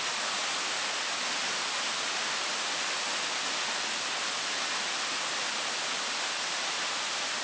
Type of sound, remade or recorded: recorded